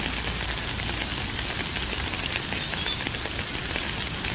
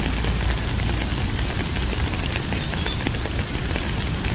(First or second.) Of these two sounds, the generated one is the second